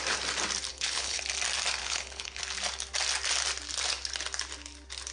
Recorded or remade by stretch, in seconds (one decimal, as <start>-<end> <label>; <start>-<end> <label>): 0.0-0.7 recorded; 0.7-1.2 remade; 1.2-1.8 recorded; 1.8-2.4 remade; 2.4-5.1 recorded